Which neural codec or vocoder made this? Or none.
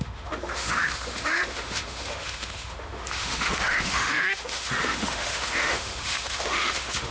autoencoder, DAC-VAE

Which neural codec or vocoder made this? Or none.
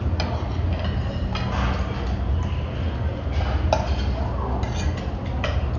none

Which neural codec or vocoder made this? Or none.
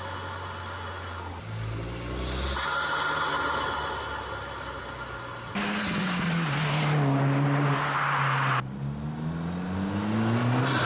none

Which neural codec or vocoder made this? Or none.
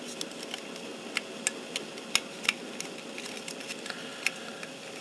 none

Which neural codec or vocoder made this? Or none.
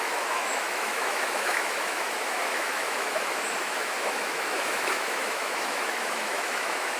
autoencoder, DAC-VAE